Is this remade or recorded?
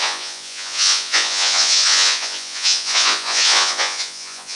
remade